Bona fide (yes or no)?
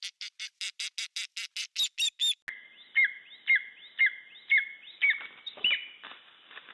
yes